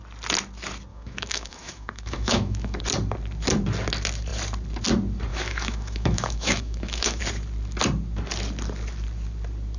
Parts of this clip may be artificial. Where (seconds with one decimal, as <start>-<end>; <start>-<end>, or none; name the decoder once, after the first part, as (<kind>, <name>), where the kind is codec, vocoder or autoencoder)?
0.9-2.8 (autoencoder, DAC-VAE); 5.3-7.2